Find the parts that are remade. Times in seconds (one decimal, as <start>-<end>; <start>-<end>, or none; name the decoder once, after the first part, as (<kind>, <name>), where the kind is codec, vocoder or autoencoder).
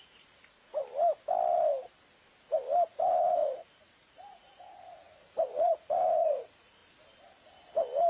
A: 0.0-0.8 (vocoder, Vocos); 2.9-6.8